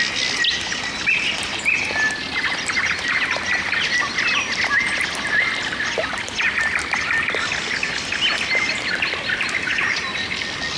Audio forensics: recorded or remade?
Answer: recorded